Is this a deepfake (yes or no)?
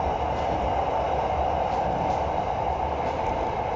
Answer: no